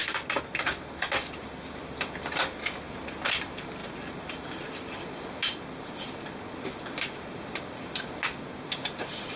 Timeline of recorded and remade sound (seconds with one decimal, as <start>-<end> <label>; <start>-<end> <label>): 0.0-9.4 recorded